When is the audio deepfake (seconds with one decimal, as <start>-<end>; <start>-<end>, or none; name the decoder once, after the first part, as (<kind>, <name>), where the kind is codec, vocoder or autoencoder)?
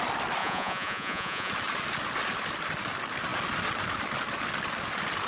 0.4-1.5 (vocoder, Vocos)